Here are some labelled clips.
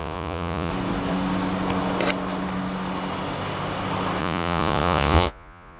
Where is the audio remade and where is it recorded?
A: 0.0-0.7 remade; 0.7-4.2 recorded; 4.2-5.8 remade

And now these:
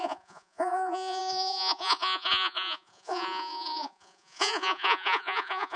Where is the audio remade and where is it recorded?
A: 0.0-5.8 remade

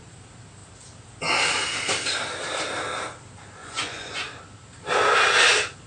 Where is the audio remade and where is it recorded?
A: 0.0-3.6 recorded; 3.6-4.1 remade; 4.1-5.9 recorded

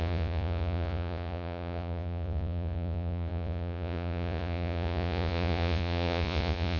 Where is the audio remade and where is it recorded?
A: 0.0-6.8 remade

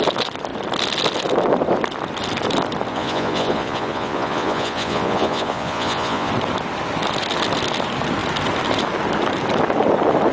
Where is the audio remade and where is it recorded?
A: 0.0-2.9 recorded; 2.9-6.3 remade; 6.3-10.3 recorded

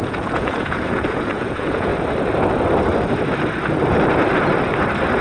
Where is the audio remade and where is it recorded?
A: 0.0-1.9 remade; 1.9-5.2 recorded

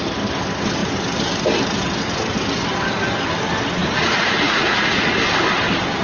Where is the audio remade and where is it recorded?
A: 0.0-3.8 recorded; 3.8-5.1 remade; 5.1-6.0 recorded

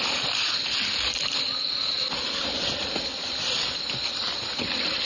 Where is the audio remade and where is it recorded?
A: 0.0-5.0 recorded